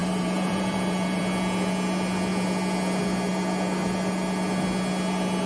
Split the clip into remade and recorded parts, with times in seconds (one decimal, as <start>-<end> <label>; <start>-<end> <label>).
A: 0.0-1.2 remade; 1.2-5.5 recorded